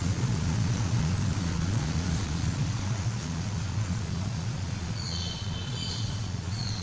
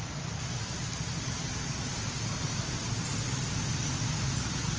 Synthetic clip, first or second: first